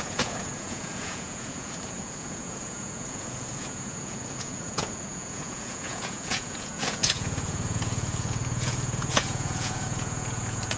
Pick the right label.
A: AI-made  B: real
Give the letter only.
A